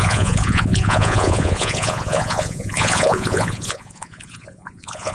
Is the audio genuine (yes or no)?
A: no